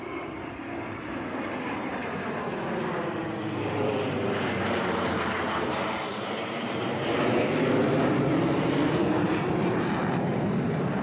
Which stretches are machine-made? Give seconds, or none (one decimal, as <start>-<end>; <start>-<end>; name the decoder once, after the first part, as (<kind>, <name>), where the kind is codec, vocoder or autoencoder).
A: 0.0-0.6 (vocoder, BigVGAN v2); 1.6-2.0; 2.9-11.0